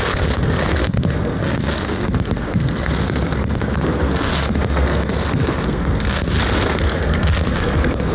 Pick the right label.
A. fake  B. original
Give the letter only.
A